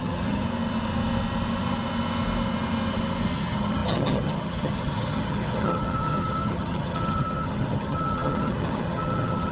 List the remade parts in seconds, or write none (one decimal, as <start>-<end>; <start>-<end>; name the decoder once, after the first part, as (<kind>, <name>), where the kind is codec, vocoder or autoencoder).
0.0-0.4 (vocoder, HiFi-GAN); 3.3-9.5